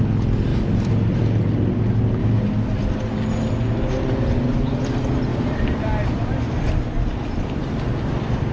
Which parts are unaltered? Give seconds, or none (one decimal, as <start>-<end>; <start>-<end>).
0.0-0.5; 1.2-5.3; 5.8-8.5

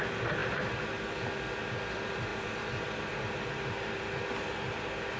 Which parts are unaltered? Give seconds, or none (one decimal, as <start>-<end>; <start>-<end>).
0.4-1.9

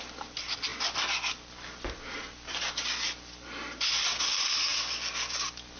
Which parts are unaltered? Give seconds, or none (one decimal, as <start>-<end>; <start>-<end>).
0.0-5.8

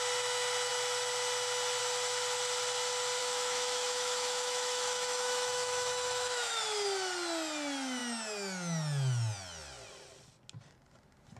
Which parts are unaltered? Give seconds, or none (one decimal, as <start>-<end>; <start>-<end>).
0.0-3.2; 6.6-11.4

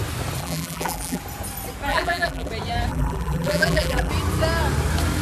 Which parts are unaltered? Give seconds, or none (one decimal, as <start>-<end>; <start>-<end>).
0.0-0.4; 1.2-1.9; 2.5-2.9; 4.1-5.2

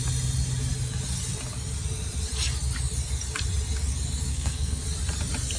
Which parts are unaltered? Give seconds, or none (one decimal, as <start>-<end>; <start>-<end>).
0.0-4.3; 4.8-5.6